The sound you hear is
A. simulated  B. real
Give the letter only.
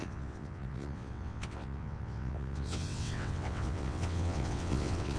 A